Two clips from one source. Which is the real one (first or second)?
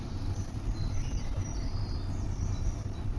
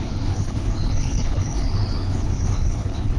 first